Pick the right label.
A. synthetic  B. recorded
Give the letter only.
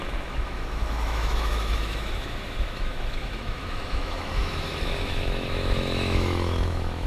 A